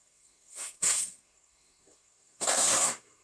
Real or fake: fake